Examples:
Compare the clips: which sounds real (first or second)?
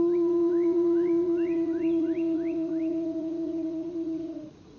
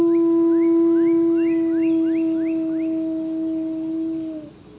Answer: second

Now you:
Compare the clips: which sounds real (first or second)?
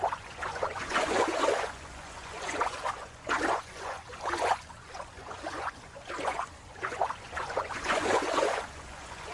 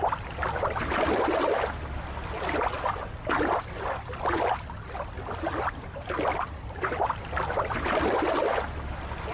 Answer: second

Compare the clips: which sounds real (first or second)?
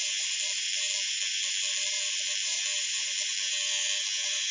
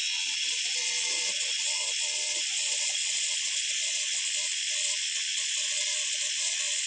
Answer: first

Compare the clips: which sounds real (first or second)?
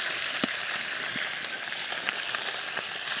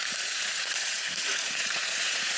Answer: first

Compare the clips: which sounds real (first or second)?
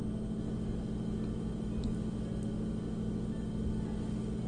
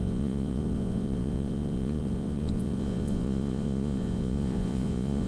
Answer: first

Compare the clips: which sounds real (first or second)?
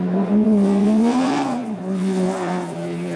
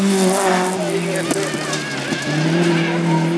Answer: second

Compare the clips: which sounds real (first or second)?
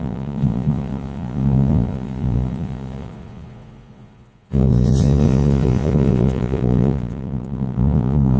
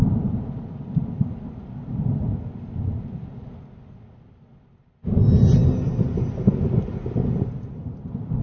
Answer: second